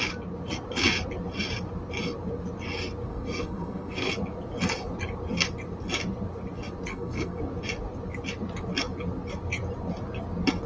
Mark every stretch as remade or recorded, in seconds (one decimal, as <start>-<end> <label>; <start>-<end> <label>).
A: 0.0-3.1 recorded; 3.1-4.1 remade; 4.1-6.9 recorded; 6.9-7.4 remade; 7.4-10.7 recorded